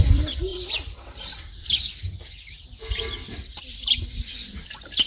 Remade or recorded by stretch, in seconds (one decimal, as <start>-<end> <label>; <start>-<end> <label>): 0.0-5.1 remade